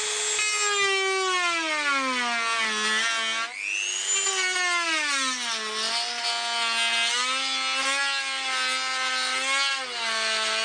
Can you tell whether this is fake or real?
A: real